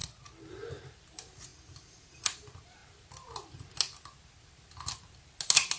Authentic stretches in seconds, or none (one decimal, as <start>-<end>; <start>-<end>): 0.0-1.5; 2.2-5.8